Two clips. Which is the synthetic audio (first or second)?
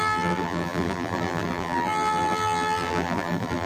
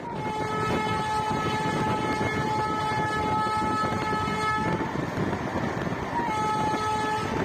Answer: first